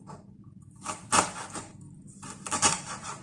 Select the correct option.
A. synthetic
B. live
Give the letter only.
B